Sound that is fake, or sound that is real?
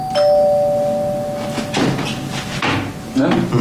real